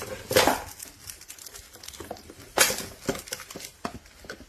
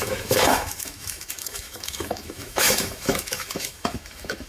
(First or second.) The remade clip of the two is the second